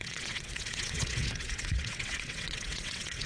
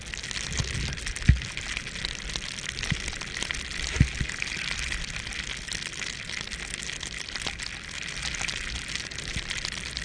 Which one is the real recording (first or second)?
second